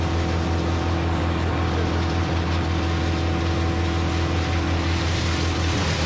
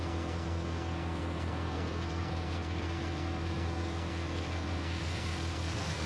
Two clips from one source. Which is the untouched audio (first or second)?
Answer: first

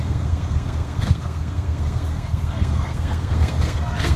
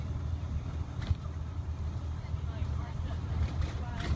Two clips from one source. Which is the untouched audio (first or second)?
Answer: second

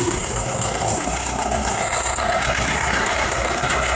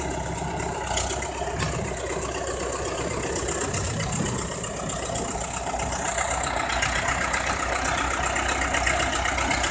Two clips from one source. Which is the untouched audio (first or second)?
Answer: second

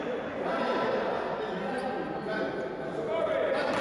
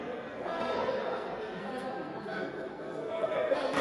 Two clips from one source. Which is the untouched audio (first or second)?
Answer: first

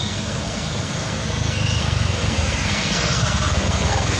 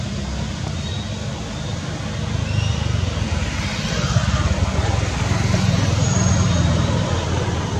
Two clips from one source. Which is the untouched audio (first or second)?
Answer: second